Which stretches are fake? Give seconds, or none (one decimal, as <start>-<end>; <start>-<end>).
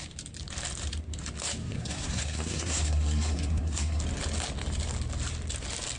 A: 1.6-4.0